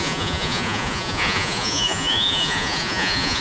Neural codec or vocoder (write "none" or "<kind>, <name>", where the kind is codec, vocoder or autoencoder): vocoder, Vocos